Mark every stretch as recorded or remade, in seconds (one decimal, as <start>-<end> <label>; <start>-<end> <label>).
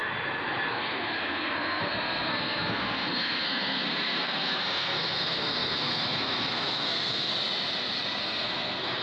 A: 0.0-0.7 recorded; 0.7-7.3 remade; 7.3-8.2 recorded; 8.2-9.0 remade